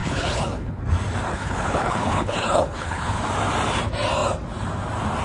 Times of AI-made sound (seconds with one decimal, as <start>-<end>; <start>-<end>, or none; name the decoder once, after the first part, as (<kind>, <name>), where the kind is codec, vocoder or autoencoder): 0.0-0.8 (codec, HILCodec); 1.3-3.2